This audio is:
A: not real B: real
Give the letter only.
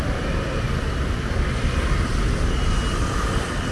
B